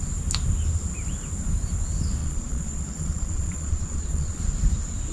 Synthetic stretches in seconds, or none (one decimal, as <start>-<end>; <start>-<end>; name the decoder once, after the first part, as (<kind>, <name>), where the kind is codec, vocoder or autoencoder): 2.2-4.4 (vocoder, Vocos)

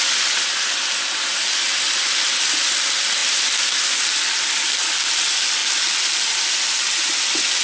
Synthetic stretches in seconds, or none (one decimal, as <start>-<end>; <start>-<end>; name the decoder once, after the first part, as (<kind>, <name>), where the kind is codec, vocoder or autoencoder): none

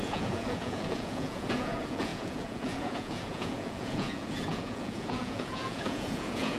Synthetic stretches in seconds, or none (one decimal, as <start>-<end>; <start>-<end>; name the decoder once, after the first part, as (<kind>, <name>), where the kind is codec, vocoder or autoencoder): 0.0-6.6 (vocoder, Vocos)

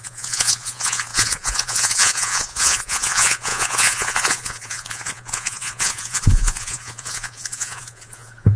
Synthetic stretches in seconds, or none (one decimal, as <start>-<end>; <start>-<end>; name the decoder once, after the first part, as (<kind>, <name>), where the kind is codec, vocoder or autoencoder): 0.0-8.6 (vocoder, Vocos)